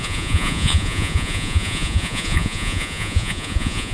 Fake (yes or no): yes